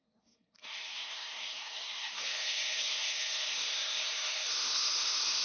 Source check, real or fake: fake